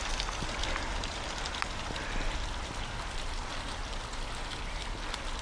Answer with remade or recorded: recorded